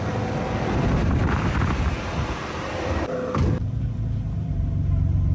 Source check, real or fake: fake